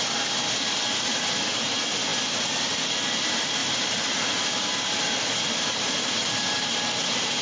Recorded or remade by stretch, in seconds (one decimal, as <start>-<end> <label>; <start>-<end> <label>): 0.0-3.6 recorded; 3.6-5.9 remade; 5.9-7.4 recorded